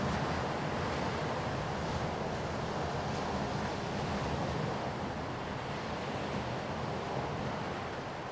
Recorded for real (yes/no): yes